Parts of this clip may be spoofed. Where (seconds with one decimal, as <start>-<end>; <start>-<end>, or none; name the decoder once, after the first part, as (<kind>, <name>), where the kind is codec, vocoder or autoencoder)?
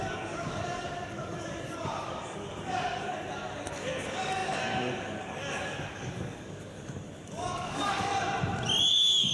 0.0-8.1 (codec, DAC); 8.9-9.3